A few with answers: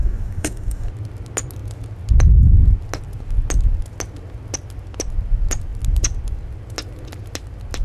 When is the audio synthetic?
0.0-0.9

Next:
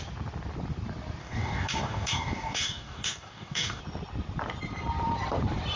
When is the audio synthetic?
1.2-3.8

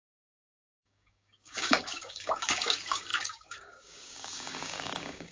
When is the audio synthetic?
0.0-5.3